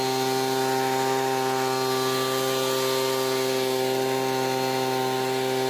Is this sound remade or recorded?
recorded